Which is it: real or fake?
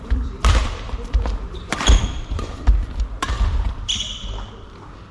fake